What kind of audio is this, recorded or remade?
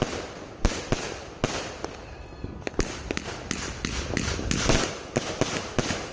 recorded